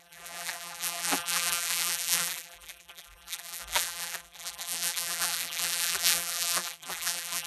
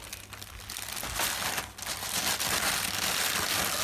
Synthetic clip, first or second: first